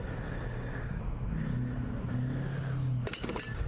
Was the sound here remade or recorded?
recorded